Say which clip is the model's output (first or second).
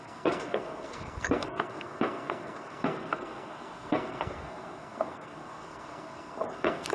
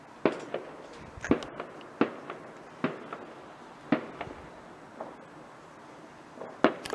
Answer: first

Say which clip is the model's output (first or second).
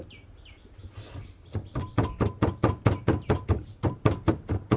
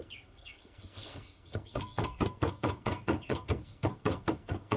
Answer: second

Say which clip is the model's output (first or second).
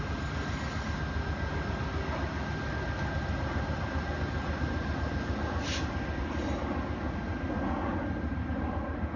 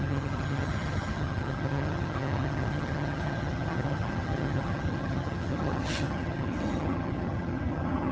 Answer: second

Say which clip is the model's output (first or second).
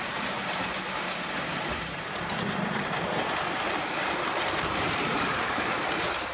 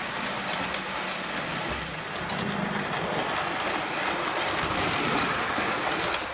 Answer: first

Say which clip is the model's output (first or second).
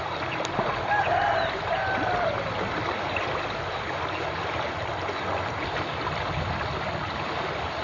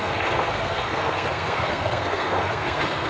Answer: second